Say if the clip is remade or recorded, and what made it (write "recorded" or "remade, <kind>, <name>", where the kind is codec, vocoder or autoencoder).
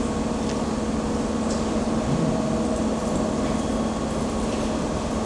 recorded